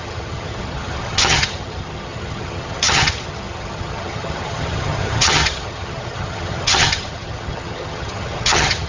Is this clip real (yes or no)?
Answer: no